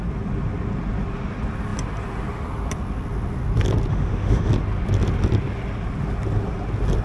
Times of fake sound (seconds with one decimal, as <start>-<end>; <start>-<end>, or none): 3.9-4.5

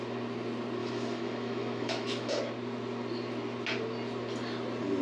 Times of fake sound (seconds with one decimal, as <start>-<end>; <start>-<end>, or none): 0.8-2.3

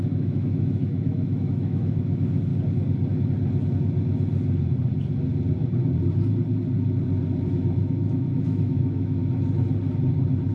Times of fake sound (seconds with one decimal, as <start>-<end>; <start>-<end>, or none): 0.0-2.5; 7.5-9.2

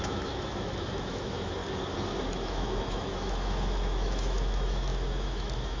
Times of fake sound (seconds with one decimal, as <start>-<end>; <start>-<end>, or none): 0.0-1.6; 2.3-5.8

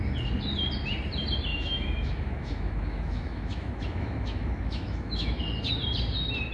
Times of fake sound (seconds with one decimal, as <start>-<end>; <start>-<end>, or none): 1.5-5.4

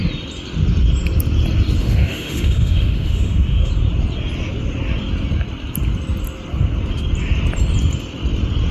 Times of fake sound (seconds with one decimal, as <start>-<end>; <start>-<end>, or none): 1.8-3.7

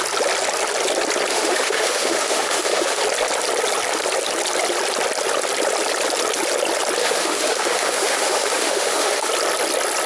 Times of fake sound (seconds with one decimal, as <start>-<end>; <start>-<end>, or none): 1.3-3.0; 7.0-9.3

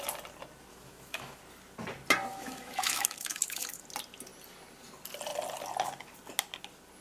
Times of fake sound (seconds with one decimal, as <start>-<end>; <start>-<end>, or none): 0.7-1.4; 2.3-3.8